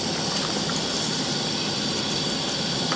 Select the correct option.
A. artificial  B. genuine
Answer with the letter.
B